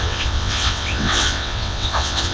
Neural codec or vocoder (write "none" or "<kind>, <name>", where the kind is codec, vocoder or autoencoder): vocoder, WaveNeXt